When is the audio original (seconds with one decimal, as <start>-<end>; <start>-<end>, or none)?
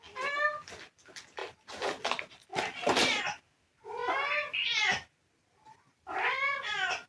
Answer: 0.0-7.1